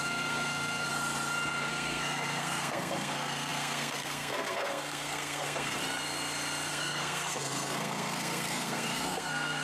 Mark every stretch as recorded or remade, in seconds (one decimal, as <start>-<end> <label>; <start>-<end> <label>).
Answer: 0.0-0.9 remade; 0.9-1.7 recorded; 1.7-5.8 remade; 5.8-6.7 recorded; 6.7-9.6 remade